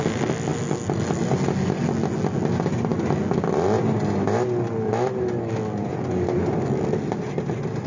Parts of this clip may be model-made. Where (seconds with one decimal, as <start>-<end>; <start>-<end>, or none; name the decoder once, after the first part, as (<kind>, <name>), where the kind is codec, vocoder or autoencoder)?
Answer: none